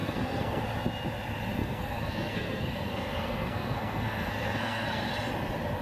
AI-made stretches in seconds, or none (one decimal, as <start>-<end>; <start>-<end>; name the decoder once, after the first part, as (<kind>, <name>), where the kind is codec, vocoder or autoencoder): 0.0-0.6 (codec, SNAC); 1.6-5.1